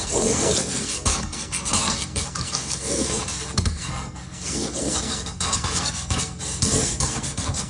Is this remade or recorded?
remade